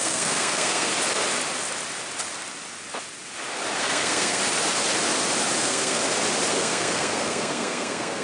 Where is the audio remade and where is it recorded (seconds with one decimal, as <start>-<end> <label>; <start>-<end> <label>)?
0.0-0.9 remade; 0.9-3.8 recorded; 3.8-4.4 remade; 4.4-5.6 recorded; 5.6-6.0 remade; 6.0-6.5 recorded; 6.5-8.2 remade